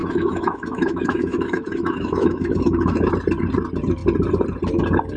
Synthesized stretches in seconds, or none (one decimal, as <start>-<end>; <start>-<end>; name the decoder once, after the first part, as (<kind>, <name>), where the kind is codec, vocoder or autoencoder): 0.0-3.1 (autoencoder, DAC-VAE)